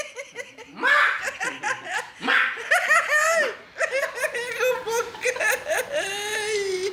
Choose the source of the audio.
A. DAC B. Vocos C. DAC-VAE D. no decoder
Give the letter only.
D